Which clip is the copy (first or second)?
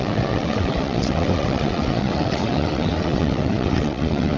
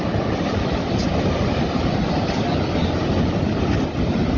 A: first